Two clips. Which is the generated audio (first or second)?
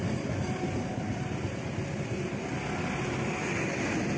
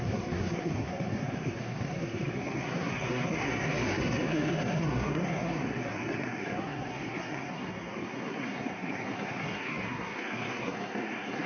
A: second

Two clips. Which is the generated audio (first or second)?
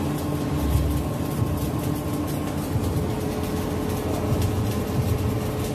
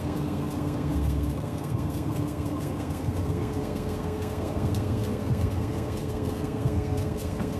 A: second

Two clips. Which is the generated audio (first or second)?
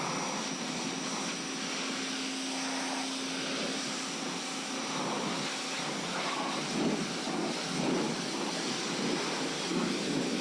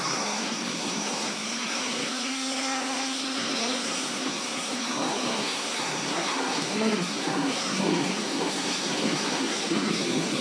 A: second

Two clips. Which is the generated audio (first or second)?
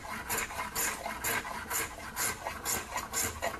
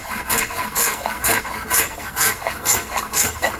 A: second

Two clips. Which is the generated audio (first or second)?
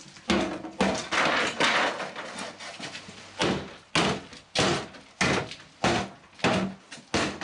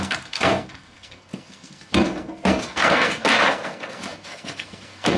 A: second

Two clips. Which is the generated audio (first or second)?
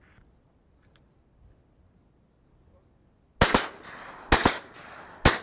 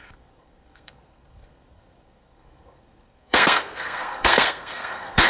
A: second